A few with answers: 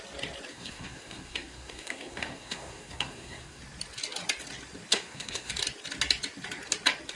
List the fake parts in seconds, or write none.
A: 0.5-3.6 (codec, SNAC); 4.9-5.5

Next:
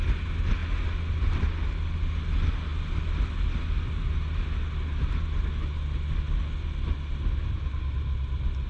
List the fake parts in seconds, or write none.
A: none